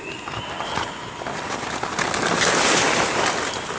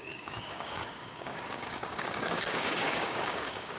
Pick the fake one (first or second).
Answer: second